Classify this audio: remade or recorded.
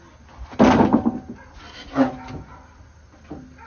recorded